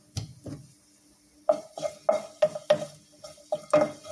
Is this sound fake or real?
real